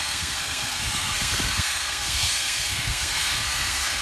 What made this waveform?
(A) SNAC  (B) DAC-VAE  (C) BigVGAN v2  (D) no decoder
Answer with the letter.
A